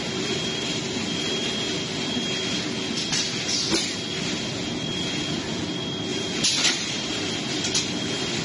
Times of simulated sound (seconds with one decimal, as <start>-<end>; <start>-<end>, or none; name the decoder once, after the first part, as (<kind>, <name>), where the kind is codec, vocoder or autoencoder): 6.1-7.2 (vocoder, BigVGAN v2)